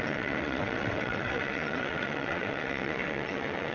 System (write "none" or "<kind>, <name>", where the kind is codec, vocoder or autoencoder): vocoder, WaveNeXt